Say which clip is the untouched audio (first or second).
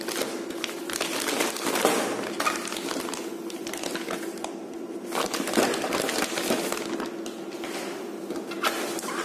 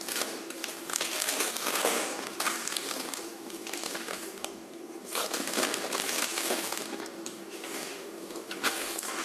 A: first